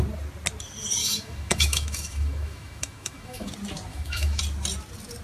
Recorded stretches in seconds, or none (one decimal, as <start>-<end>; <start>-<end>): 0.0-1.0; 3.5-3.9; 4.4-5.2